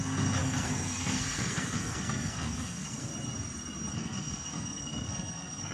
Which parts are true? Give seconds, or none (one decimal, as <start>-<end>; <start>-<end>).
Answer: 3.1-3.9

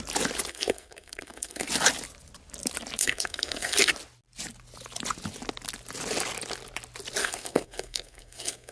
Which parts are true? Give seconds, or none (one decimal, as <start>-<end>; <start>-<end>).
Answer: 0.0-0.5; 1.7-3.0; 3.9-7.2

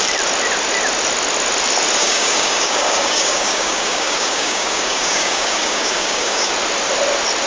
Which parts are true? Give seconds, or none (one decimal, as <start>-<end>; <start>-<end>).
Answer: 0.0-2.0; 6.5-7.5

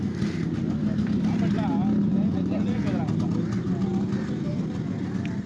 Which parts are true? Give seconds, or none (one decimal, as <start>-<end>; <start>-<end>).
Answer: 0.0-2.1; 2.8-5.5